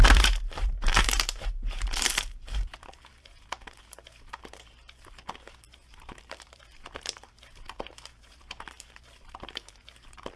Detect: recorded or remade remade